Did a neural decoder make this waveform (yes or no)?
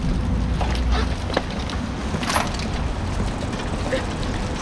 no